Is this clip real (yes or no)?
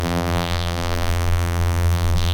no